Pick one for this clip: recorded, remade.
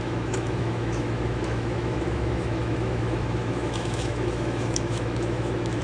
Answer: remade